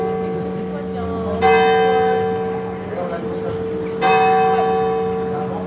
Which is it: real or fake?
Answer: real